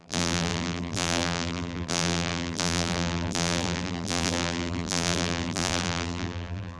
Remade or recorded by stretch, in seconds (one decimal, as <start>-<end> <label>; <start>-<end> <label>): 0.0-6.8 remade

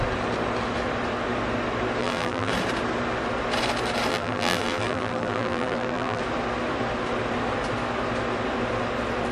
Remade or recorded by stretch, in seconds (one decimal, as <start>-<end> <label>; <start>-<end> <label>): 0.0-2.0 recorded; 2.0-2.5 remade; 2.5-4.1 recorded; 4.1-6.2 remade; 6.2-9.3 recorded

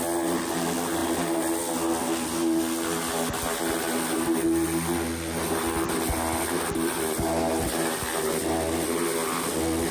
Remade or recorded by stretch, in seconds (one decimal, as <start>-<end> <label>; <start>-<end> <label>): 0.0-9.9 recorded